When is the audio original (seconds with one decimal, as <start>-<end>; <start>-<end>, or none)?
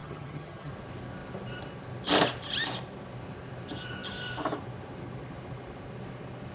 0.7-6.5